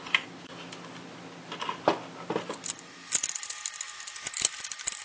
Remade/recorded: recorded